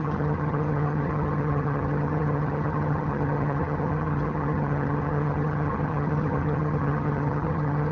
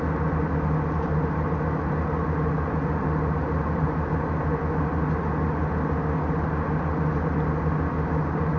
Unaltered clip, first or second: second